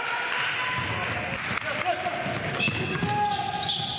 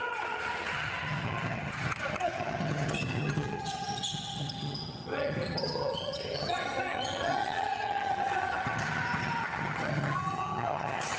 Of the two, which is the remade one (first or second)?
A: second